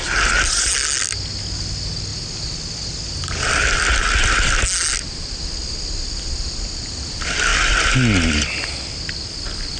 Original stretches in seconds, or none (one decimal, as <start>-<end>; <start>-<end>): 0.0-9.8